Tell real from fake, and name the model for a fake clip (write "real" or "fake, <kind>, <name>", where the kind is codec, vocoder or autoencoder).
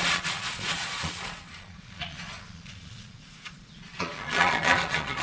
fake, vocoder, Vocos